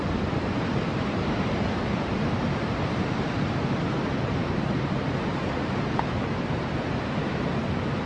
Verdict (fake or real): fake